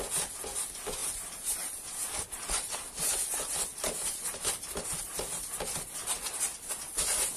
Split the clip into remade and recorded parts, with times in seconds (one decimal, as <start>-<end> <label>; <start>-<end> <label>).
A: 0.0-1.0 recorded; 1.0-5.4 remade; 5.4-7.4 recorded